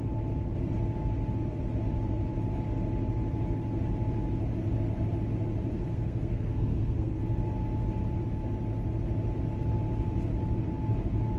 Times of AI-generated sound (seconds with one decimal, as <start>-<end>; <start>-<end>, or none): 5.7-7.2